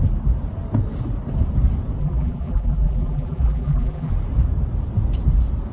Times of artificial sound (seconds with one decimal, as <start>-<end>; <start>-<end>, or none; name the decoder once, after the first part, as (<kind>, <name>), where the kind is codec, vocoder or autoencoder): 2.0-4.1 (vocoder, BigVGAN v2)